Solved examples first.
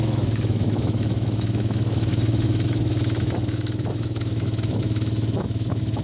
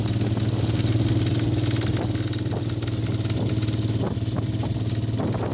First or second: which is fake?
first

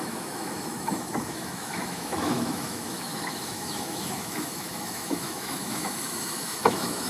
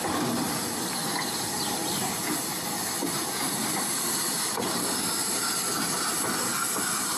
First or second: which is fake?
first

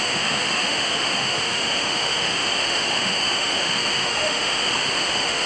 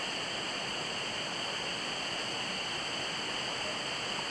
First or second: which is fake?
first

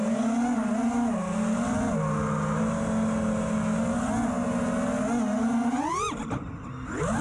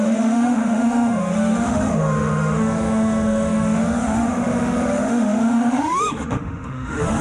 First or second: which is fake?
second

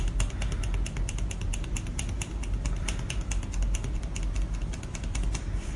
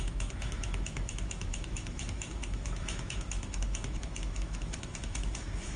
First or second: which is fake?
second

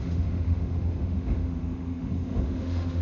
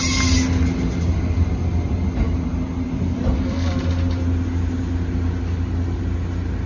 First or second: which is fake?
first